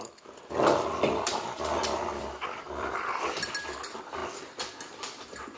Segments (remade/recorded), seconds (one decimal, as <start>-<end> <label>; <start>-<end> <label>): 0.0-5.6 recorded